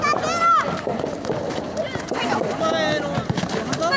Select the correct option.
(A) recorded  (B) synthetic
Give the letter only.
A